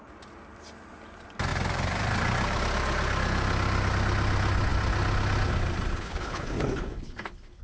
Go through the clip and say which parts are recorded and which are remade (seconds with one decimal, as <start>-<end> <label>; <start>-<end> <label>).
0.0-5.9 recorded; 5.9-7.6 remade